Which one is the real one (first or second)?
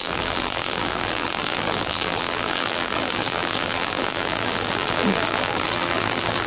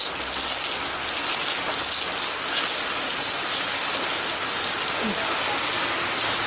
second